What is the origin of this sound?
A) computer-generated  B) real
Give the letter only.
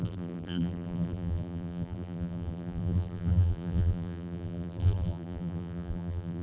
A